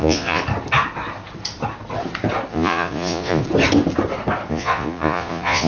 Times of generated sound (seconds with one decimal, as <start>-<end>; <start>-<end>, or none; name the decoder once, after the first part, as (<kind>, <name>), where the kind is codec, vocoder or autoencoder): 0.0-0.4 (vocoder, Vocos); 2.5-3.4; 4.5-5.7